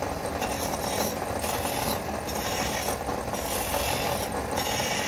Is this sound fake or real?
real